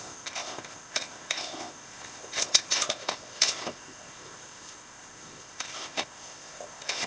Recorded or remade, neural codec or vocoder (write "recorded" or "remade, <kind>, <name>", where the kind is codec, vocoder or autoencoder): remade, codec, ZipCodec